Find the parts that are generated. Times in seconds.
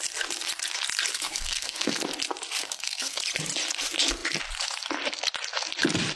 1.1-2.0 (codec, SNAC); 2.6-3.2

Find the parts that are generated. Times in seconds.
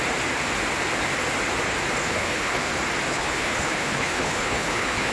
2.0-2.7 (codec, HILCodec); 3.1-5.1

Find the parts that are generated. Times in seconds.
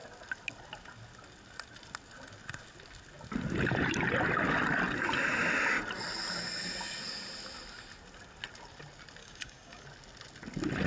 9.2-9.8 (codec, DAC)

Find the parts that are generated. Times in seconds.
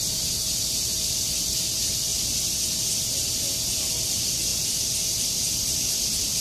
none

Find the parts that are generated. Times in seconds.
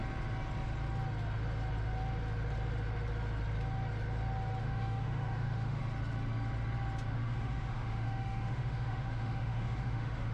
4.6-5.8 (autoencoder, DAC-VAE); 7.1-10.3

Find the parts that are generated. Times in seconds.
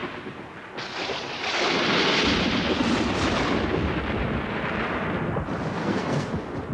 5.8-6.3 (codec, SNAC)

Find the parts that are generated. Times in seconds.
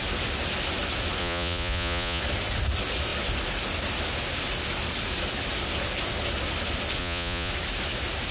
1.2-2.2 (vocoder, Vocos); 7.0-7.5